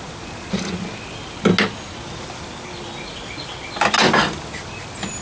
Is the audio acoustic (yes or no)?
yes